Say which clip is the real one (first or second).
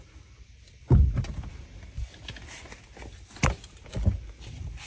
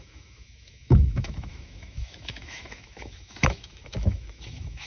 first